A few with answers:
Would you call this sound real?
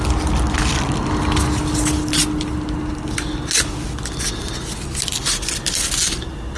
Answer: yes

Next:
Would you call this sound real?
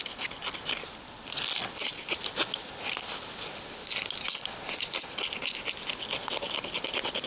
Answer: yes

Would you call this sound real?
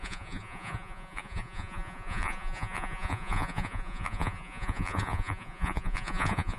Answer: no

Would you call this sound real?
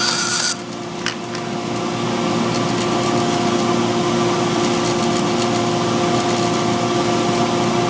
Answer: yes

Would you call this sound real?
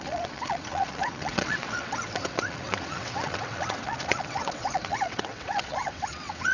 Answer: no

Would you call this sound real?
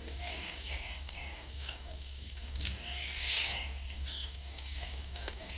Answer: no